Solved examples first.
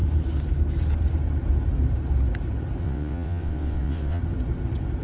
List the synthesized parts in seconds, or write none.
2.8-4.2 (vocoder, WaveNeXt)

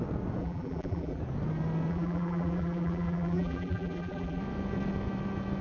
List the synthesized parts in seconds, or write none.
0.4-1.2 (vocoder, BigVGAN v2); 1.9-4.4

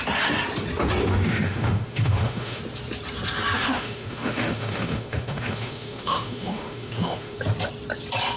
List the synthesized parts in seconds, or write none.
1.0-2.6 (autoencoder, DAC-VAE); 3.6-7.4

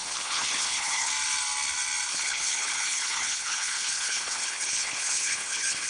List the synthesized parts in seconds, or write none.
0.0-1.1 (codec, HILCodec); 2.1-5.9

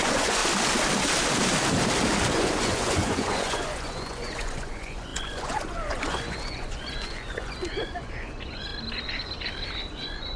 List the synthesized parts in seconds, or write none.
0.0-0.4 (vocoder, Vocos); 2.3-8.7; 9.9-10.4

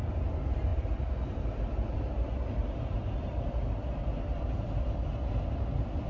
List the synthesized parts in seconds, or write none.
none

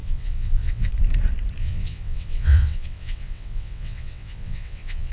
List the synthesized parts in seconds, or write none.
0.0-0.9 (vocoder, WaveNeXt); 1.6-5.1

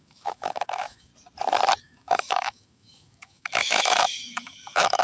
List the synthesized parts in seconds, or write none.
0.0-1.1 (autoencoder, DAC-VAE); 1.8-5.0